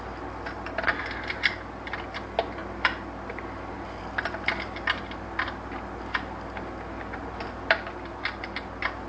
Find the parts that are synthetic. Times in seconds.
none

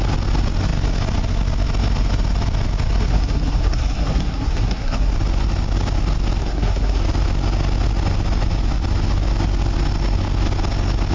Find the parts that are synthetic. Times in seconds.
3.1-5.1 (codec, SNAC); 6.4-7.0

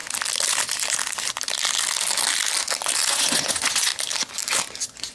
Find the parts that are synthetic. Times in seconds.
3.1-3.9 (vocoder, Vocos)

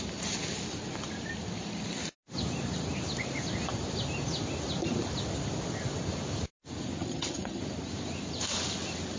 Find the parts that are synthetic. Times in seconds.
7.0-7.6 (vocoder, HiFi-GAN)

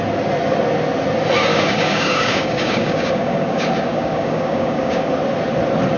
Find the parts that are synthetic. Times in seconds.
1.5-5.1 (codec, DAC)

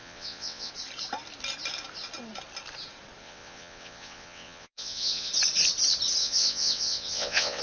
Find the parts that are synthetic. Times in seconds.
0.0-0.7 (vocoder, WaveNeXt); 3.2-5.3; 6.2-7.6

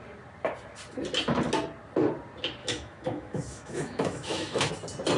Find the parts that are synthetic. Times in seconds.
2.6-4.7 (autoencoder, DAC-VAE)

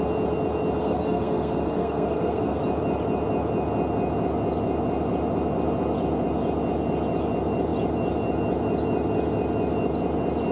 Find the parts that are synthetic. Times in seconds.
0.8-2.6 (codec, SNAC)